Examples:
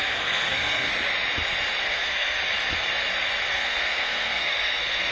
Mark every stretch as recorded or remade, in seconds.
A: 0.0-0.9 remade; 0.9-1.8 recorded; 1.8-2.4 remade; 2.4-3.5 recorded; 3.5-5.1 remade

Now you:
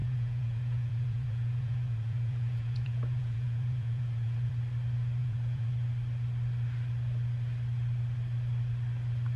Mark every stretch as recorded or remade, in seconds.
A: 0.0-4.5 remade; 4.5-5.2 recorded; 5.2-5.7 remade; 5.7-9.4 recorded

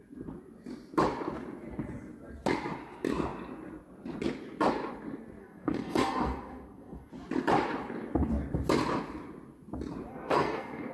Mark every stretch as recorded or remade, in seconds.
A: 0.0-5.4 recorded; 5.4-7.1 remade; 7.1-10.1 recorded; 10.1-10.9 remade

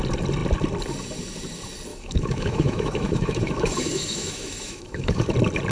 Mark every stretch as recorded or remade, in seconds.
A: 0.0-1.9 recorded; 1.9-5.3 remade; 5.3-5.7 recorded